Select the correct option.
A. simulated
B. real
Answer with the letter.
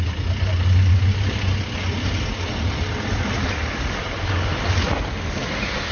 B